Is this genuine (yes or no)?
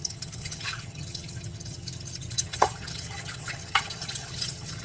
no